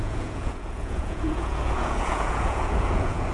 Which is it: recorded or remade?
remade